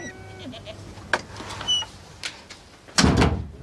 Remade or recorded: recorded